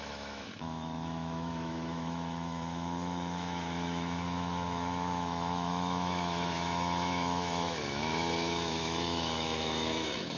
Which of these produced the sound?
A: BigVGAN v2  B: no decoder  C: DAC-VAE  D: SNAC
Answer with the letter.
C